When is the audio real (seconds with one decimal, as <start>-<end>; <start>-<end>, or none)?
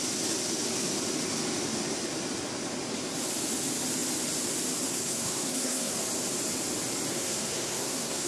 0.0-4.9; 5.9-7.1